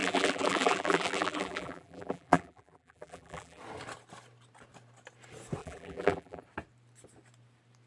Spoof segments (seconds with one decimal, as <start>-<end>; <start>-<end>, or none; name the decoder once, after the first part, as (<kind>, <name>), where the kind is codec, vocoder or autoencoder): 0.0-3.6 (vocoder, BigVGAN v2); 5.6-6.4